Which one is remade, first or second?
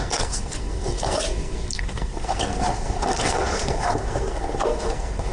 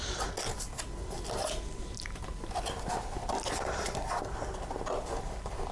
first